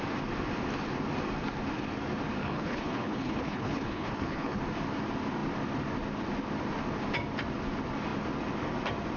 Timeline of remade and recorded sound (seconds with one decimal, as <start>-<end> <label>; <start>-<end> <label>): 0.0-2.4 recorded; 2.4-4.6 remade; 4.6-9.2 recorded